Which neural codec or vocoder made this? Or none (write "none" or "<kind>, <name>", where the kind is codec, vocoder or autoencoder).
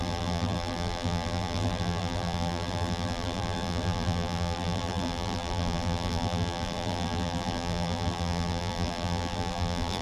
vocoder, BigVGAN v2